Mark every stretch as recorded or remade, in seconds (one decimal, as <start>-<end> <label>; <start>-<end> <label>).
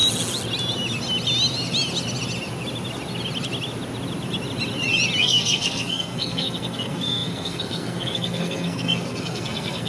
0.0-5.2 recorded; 5.2-9.9 remade